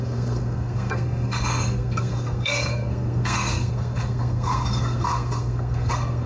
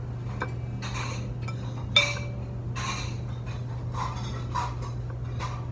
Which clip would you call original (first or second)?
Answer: second